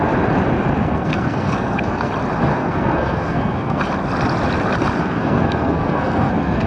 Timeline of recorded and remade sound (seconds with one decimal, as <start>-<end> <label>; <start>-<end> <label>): 0.0-0.8 recorded; 0.8-2.1 remade; 2.1-2.5 recorded; 2.5-3.8 remade; 3.8-5.0 recorded; 5.0-6.7 remade